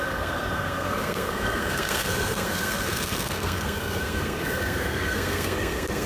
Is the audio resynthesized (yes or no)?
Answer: yes